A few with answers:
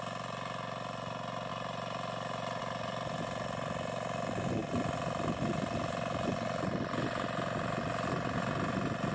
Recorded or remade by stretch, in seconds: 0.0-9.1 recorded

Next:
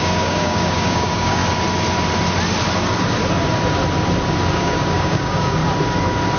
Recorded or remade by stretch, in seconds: 0.0-1.4 remade; 1.4-4.5 recorded; 4.5-5.6 remade; 5.6-6.4 recorded